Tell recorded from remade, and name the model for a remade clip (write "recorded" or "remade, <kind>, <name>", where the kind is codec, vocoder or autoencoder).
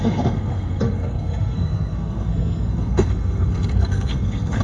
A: remade, codec, SNAC